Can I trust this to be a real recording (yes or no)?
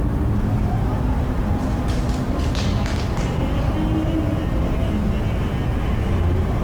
yes